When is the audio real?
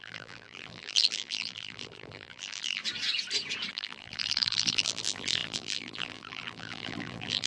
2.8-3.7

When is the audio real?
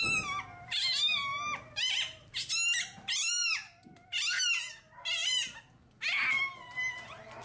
0.0-7.4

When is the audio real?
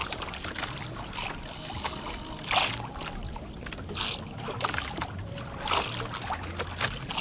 0.0-7.2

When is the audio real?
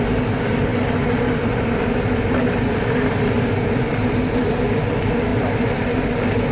0.0-0.7; 3.5-6.5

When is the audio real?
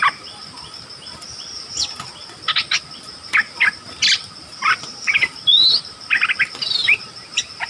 0.0-4.4; 5.3-6.8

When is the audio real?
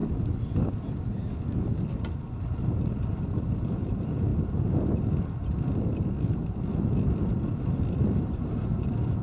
0.0-1.9; 4.3-8.1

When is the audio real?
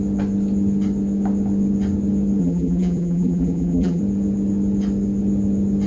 0.0-2.4; 4.0-5.9